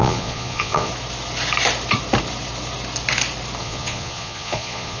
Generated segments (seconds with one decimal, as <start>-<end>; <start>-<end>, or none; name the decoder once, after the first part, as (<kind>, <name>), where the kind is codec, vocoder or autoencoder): 0.0-0.9 (vocoder, Vocos); 3.6-5.0